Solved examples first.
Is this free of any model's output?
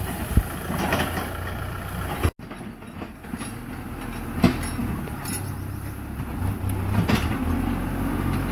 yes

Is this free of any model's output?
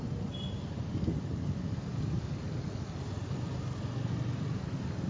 yes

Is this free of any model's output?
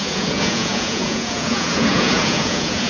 no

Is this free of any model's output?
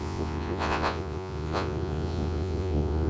no